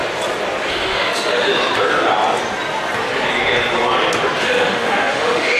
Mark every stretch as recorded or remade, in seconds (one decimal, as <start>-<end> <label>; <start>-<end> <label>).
0.0-0.7 recorded; 0.7-1.5 remade; 1.5-4.4 recorded; 4.4-5.6 remade